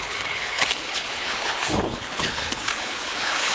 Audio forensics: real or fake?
fake